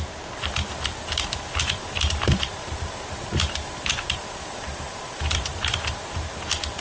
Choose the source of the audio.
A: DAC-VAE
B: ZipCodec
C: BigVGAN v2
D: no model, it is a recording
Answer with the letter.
C